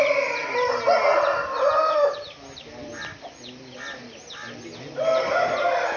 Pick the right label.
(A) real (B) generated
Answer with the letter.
A